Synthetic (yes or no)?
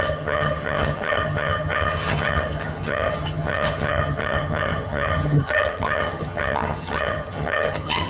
yes